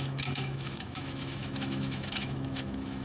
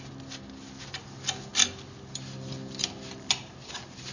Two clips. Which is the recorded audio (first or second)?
second